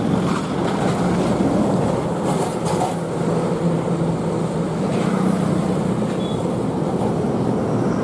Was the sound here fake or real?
real